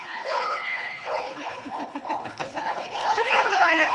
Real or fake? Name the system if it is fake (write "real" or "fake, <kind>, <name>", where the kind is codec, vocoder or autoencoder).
fake, codec, HILCodec